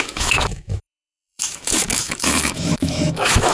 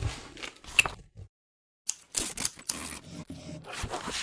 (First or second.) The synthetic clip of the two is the first